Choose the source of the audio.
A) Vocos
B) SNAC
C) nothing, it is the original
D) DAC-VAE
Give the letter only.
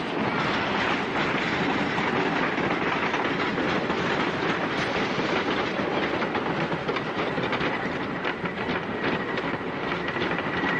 C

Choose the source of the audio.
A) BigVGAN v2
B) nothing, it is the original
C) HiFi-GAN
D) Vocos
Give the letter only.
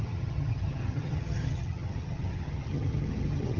C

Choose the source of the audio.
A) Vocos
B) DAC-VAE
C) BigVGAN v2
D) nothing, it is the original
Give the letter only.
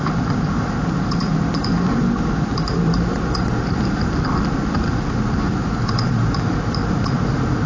C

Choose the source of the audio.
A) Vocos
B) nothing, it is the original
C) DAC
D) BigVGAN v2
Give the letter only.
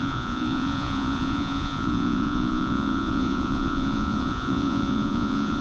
A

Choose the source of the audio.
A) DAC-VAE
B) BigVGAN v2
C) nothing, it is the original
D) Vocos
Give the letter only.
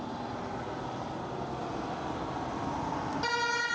C